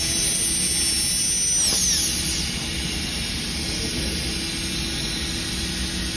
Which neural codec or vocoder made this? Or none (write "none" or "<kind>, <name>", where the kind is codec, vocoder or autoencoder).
none